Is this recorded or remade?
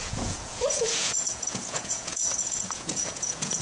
remade